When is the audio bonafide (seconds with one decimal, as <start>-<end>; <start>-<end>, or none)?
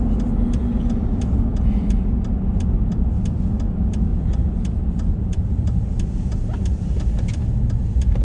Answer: 0.0-4.1; 5.8-8.2